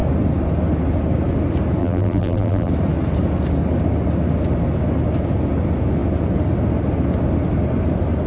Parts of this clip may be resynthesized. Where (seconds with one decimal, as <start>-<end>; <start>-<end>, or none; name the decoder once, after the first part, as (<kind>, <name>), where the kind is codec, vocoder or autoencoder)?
1.8-2.7 (vocoder, BigVGAN v2)